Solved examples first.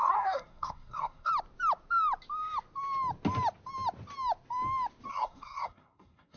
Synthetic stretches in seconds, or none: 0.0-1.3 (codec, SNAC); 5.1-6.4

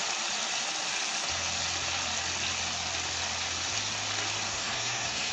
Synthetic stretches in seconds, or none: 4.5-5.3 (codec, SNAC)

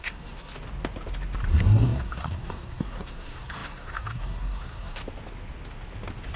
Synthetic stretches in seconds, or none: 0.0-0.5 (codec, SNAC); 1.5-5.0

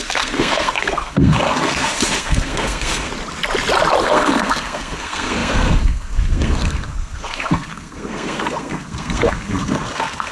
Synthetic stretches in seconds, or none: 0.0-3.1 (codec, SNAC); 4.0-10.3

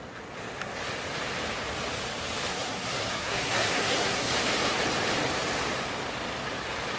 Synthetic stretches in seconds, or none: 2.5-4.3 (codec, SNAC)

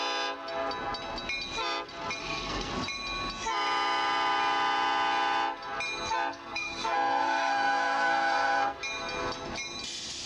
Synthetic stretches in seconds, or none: 2.2-2.7 (codec, SNAC); 6.3-8.8